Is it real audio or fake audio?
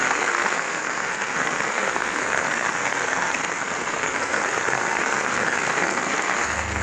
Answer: fake